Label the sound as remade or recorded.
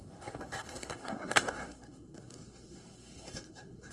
remade